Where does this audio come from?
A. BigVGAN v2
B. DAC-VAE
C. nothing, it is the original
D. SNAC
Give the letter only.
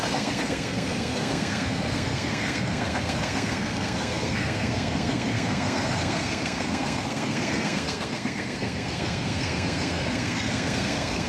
D